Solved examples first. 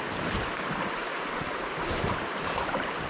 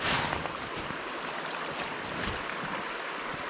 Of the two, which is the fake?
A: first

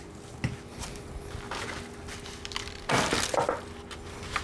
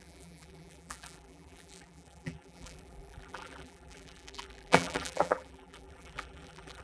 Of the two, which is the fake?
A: second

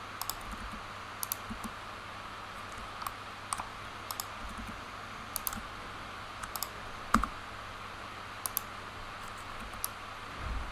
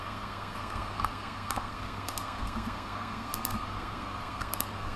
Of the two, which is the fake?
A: second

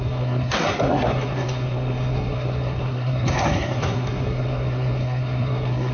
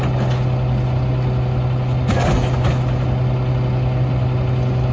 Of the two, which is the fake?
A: first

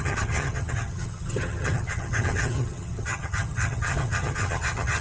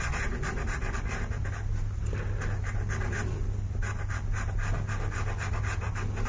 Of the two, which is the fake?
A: first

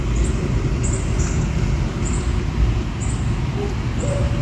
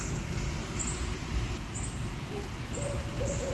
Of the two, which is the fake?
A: second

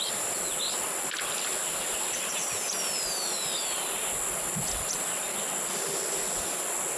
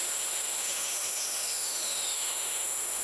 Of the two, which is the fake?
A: second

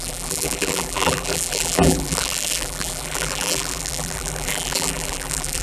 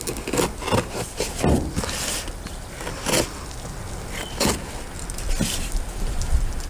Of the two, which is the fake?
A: first